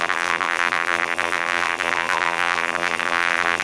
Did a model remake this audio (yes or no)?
yes